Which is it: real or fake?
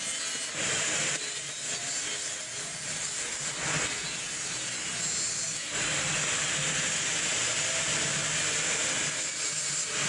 real